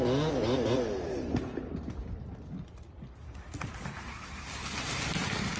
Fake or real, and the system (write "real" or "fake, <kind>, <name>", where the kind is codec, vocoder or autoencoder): real